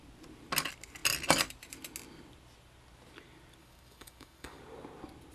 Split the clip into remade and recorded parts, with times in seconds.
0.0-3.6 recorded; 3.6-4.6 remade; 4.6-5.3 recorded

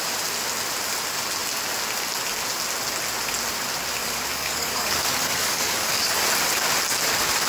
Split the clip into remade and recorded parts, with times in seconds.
0.0-4.0 recorded; 4.0-6.1 remade; 6.1-7.5 recorded

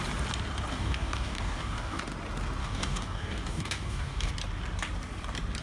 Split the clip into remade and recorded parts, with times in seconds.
0.0-0.7 recorded; 0.7-2.0 remade; 2.0-2.6 recorded; 2.6-4.3 remade; 4.3-5.6 recorded

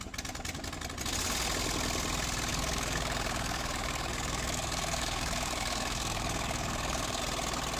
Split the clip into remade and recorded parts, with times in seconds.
0.0-2.5 recorded; 2.5-7.2 remade; 7.2-7.8 recorded